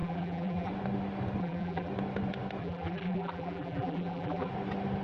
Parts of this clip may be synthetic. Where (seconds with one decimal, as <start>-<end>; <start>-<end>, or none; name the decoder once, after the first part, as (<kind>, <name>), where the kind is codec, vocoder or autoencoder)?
0.0-0.7 (vocoder, BigVGAN v2); 1.4-1.9; 2.6-4.5